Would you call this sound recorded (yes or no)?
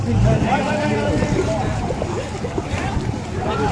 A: no